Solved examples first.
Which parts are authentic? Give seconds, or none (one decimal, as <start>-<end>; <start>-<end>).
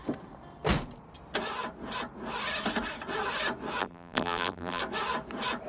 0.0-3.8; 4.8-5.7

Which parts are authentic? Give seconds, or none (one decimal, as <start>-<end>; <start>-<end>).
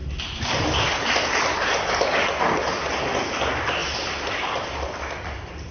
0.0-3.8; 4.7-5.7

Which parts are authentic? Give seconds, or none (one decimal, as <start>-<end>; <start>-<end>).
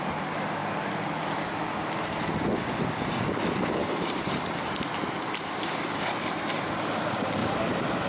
0.0-3.8; 5.2-8.1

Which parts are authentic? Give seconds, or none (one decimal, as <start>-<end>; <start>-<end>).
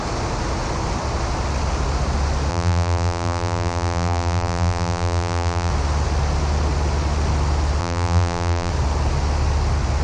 0.0-2.5; 5.7-7.8; 8.7-10.0